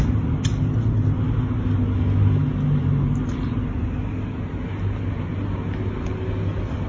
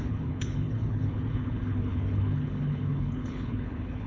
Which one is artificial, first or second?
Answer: second